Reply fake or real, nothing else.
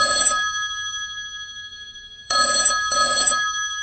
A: fake